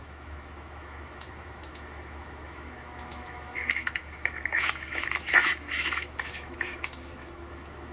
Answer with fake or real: fake